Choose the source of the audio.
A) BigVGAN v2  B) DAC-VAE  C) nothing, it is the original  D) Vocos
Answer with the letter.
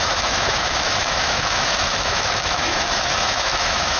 B